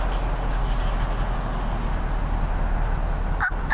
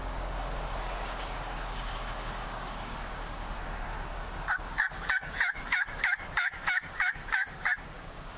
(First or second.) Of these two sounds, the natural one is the first